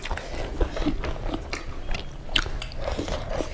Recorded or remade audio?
recorded